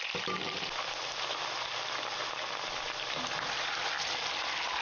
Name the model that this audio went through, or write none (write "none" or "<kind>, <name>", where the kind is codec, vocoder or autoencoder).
none